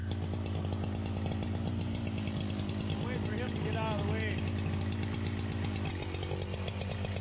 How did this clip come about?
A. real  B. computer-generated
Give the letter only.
A